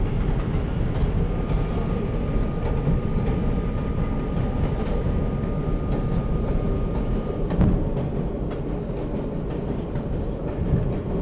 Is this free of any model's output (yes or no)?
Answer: yes